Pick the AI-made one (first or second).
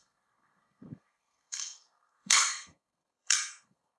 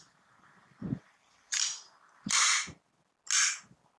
first